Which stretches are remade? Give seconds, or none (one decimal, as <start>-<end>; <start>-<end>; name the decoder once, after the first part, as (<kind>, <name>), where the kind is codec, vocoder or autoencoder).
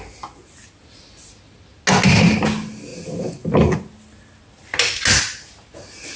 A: none